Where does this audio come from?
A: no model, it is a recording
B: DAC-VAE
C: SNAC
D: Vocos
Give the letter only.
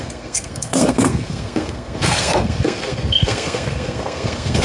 C